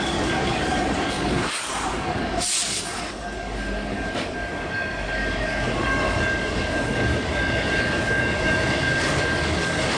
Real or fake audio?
fake